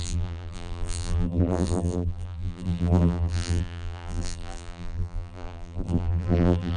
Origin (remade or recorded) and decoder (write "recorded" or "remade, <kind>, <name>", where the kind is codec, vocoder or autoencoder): remade, vocoder, BigVGAN v2